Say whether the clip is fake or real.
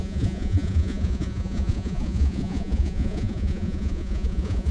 fake